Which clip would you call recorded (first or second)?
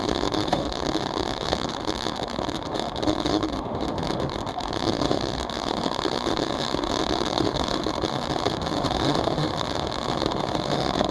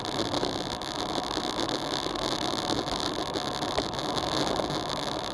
second